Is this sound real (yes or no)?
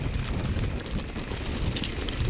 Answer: yes